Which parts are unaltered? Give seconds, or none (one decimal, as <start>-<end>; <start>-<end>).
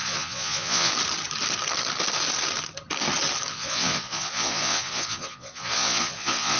0.9-3.5